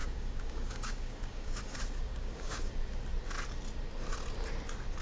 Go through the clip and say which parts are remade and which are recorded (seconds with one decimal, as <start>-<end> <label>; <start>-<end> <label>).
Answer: 0.0-1.6 remade; 1.6-2.1 recorded; 2.1-2.7 remade; 2.7-5.0 recorded